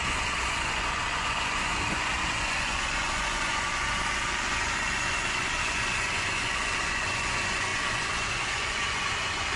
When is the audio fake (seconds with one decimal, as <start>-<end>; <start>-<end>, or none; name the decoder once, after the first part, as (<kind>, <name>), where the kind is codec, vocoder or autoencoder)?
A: 0.0-9.6 (vocoder, Vocos)